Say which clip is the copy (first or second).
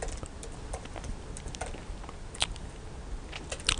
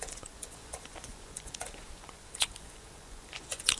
second